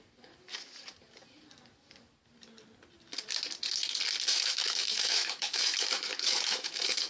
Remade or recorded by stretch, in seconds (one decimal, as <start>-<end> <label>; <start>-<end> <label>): 0.0-4.3 recorded; 4.3-7.1 remade